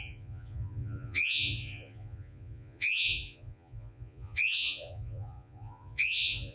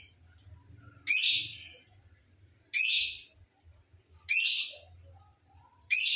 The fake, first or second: first